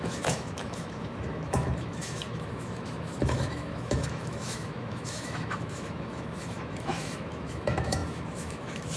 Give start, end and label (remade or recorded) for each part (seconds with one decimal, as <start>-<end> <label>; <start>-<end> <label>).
0.0-9.0 remade